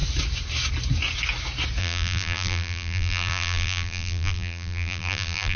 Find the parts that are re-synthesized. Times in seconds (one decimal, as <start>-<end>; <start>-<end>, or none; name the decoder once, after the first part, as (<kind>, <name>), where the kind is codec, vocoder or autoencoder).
1.8-5.6 (vocoder, BigVGAN v2)